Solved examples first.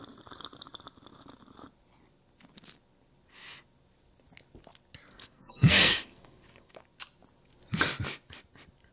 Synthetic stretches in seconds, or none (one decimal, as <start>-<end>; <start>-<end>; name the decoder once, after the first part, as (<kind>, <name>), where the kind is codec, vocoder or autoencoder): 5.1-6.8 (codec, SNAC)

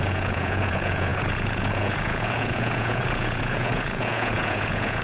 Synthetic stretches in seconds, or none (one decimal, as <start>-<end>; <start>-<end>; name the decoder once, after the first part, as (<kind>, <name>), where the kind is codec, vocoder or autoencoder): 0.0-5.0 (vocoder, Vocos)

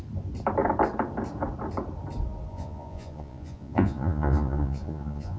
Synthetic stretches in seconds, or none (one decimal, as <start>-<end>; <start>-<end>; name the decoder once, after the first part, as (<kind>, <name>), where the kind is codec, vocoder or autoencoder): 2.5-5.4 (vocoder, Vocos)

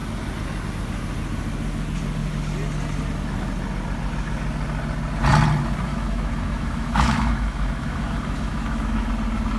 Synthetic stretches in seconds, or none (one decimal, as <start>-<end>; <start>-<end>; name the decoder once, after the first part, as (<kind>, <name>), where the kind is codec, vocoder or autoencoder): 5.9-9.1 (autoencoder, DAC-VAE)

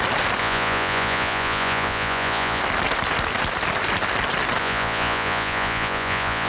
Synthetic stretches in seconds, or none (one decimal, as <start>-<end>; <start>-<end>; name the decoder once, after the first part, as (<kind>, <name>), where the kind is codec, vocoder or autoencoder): 0.4-2.6 (vocoder, Vocos); 4.6-6.5